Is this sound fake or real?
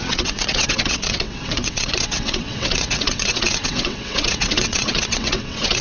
fake